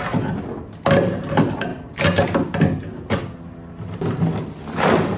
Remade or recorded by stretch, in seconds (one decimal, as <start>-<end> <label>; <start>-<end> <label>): 0.0-5.2 recorded